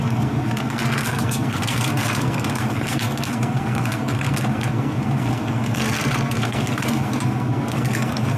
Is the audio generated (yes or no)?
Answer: yes